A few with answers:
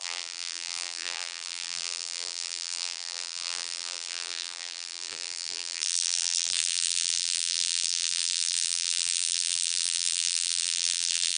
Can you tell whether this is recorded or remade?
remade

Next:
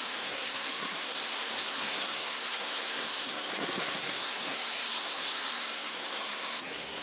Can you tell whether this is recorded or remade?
remade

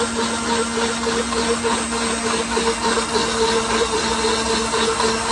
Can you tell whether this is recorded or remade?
recorded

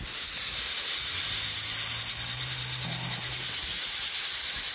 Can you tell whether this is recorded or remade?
recorded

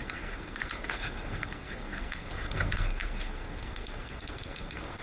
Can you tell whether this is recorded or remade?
remade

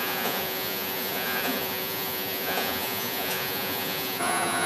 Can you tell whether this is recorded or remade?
remade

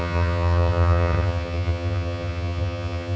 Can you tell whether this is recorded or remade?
remade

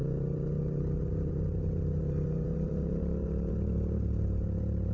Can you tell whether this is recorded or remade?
remade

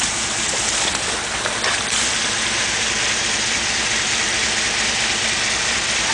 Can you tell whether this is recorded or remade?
remade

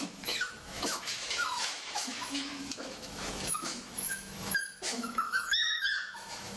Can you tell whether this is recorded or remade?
remade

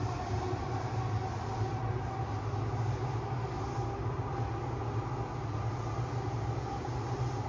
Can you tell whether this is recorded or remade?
recorded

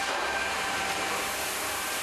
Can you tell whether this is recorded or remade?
remade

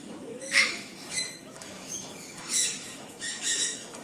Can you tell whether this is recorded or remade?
remade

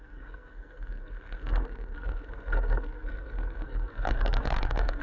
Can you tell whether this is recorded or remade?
remade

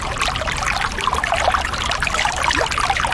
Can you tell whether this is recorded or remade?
recorded